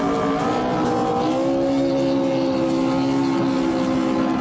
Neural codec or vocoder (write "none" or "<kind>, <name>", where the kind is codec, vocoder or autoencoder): none